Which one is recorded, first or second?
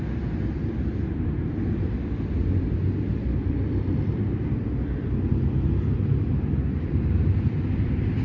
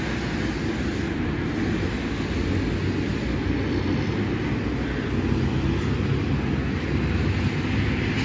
second